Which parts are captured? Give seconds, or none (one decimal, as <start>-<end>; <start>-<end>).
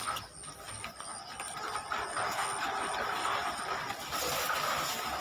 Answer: 0.0-5.2